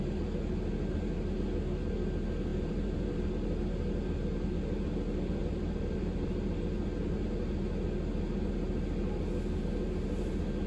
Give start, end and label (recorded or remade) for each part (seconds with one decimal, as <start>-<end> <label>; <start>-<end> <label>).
0.0-2.5 recorded; 2.5-3.3 remade; 3.3-5.4 recorded; 5.4-6.3 remade; 6.3-10.7 recorded